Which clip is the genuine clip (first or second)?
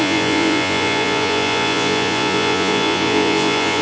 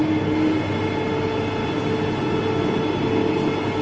second